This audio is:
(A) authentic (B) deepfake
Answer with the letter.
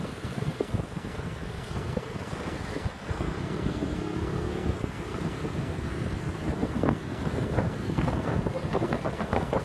B